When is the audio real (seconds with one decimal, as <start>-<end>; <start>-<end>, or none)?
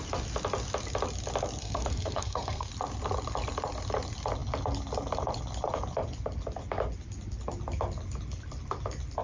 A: 0.0-1.6; 2.7-9.2